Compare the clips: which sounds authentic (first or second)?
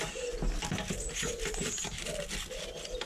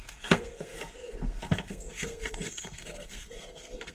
first